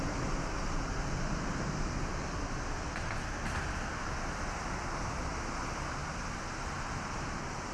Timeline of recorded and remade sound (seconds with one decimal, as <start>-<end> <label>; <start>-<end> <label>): 0.0-7.7 recorded